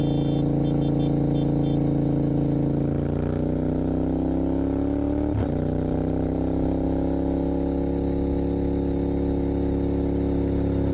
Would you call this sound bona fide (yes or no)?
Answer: yes